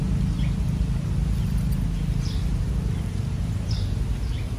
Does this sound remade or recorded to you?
recorded